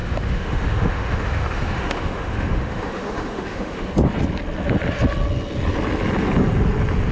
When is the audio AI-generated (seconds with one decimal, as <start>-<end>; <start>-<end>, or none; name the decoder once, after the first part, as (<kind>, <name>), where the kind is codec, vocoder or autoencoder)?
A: 0.0-3.9 (autoencoder, DAC-VAE)